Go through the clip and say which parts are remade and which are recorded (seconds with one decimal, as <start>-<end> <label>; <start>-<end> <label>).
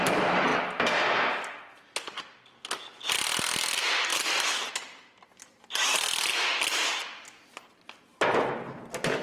0.0-9.2 recorded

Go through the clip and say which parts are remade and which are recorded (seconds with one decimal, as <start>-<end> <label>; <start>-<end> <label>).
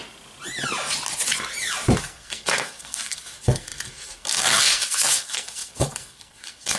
0.0-2.0 recorded; 2.0-6.8 remade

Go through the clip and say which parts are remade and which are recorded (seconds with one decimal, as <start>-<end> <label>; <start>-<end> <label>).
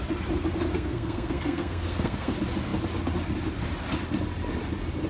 0.0-0.7 recorded; 0.7-2.3 remade; 2.3-5.1 recorded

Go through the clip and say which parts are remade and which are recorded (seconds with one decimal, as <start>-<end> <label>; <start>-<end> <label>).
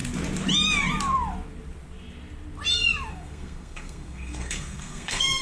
0.0-3.1 recorded; 3.1-5.4 remade